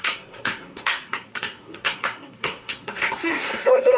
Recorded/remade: remade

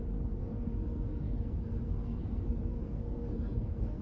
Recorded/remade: remade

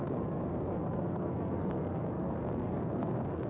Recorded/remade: remade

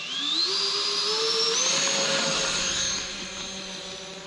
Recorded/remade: recorded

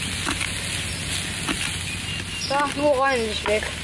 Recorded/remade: recorded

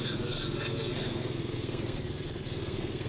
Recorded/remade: remade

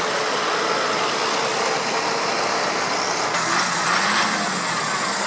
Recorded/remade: recorded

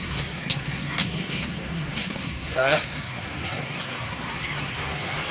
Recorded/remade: remade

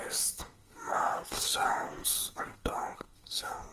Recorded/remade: remade